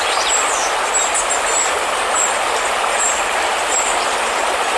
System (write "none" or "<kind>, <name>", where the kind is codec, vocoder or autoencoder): none